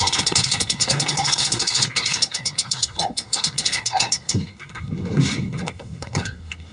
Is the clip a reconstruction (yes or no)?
yes